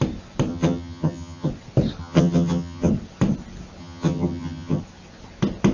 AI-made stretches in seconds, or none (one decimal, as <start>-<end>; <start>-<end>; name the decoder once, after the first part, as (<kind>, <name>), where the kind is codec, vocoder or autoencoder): 0.5-1.5 (vocoder, HiFi-GAN); 2.0-2.9; 3.8-4.8